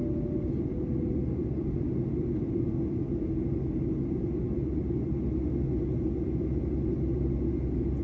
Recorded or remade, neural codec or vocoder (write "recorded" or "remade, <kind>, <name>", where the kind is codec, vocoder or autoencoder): recorded